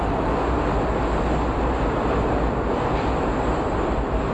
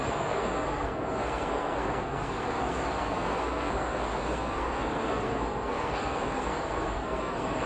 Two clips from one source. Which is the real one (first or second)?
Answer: first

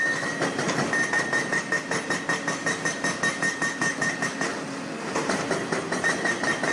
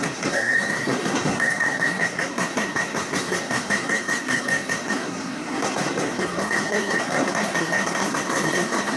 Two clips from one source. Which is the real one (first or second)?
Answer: first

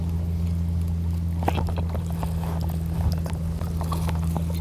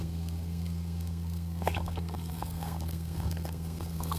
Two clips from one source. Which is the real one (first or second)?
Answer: first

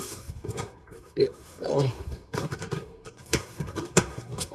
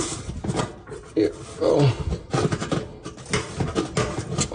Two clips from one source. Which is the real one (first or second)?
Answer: second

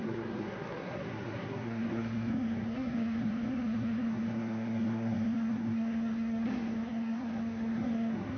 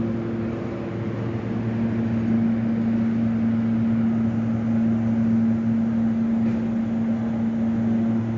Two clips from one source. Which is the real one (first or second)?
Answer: second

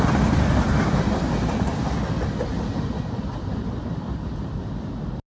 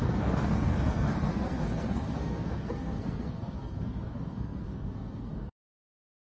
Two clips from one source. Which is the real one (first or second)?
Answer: first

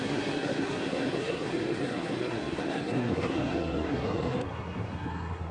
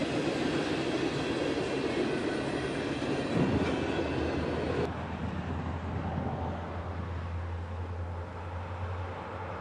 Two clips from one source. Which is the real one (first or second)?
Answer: second